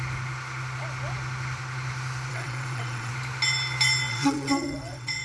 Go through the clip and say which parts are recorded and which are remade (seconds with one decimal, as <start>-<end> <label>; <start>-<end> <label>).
0.0-2.3 recorded; 2.3-3.1 remade; 3.1-4.1 recorded; 4.1-5.2 remade